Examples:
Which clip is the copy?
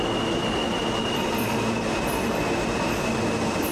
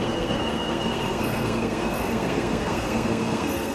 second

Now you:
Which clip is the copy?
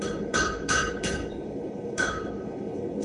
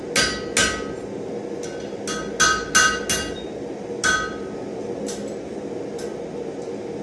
first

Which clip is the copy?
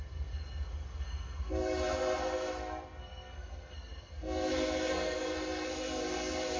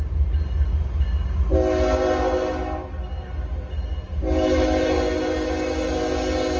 first